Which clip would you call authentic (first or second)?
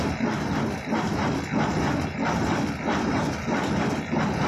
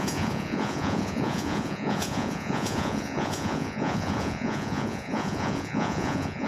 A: first